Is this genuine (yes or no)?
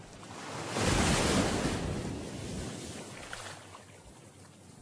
yes